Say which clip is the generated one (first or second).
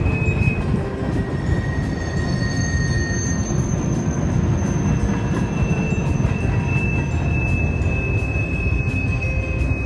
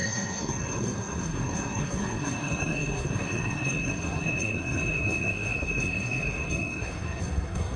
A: second